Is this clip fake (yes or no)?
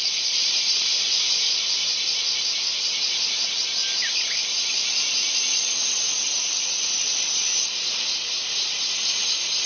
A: yes